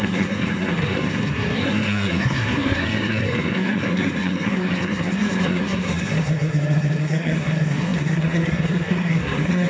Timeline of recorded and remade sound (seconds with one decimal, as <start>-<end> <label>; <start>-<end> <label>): 0.0-9.7 remade